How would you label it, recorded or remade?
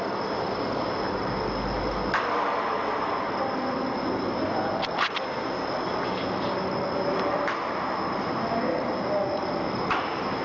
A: recorded